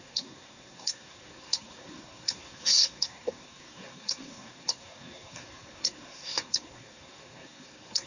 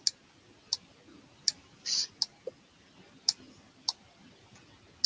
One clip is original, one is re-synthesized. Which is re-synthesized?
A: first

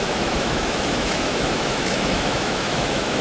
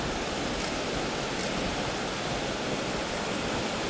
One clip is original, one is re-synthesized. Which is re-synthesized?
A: first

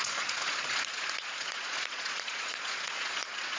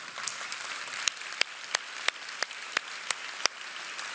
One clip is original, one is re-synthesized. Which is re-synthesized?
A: first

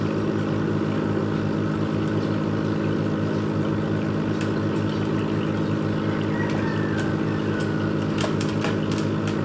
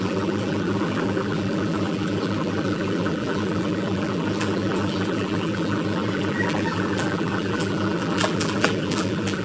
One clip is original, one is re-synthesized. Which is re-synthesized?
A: second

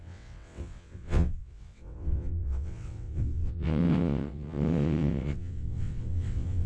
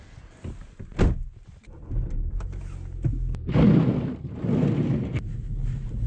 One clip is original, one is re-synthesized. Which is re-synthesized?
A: first